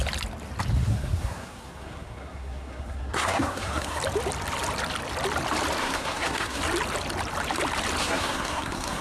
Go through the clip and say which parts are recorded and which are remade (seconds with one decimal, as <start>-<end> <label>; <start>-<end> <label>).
0.0-0.8 recorded; 0.8-4.0 remade; 4.0-5.8 recorded; 5.8-6.6 remade; 6.6-8.0 recorded; 8.0-9.0 remade